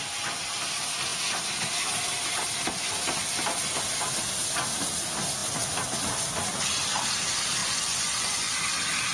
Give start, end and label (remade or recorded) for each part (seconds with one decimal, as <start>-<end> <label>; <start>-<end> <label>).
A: 0.0-7.6 recorded; 7.6-8.5 remade; 8.5-9.1 recorded